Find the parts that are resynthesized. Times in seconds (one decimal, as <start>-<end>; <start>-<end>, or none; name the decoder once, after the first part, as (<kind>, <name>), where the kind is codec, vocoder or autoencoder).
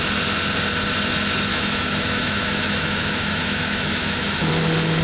1.5-4.5 (autoencoder, DAC-VAE)